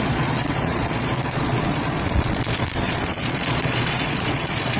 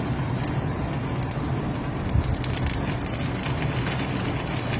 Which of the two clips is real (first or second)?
second